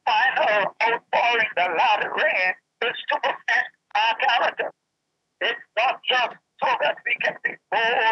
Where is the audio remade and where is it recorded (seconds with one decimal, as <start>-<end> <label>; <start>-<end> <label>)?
0.0-3.9 remade; 3.9-4.7 recorded; 4.7-8.1 remade